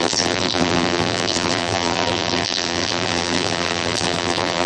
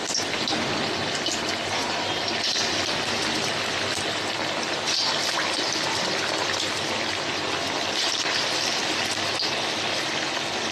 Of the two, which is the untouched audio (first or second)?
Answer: second